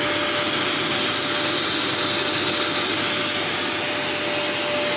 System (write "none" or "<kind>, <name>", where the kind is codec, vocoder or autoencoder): none